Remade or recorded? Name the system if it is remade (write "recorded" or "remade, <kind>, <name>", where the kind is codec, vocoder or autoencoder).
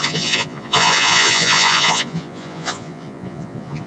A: remade, vocoder, Vocos